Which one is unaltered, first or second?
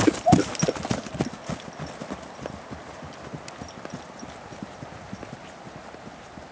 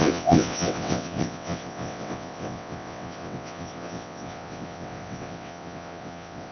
first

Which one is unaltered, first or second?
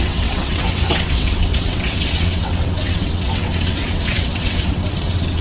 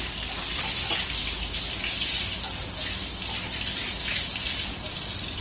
second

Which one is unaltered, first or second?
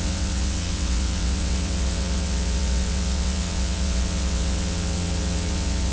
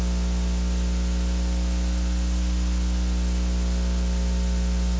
second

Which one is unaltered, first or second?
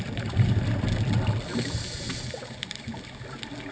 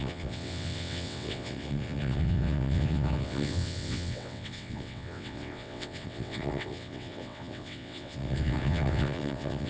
first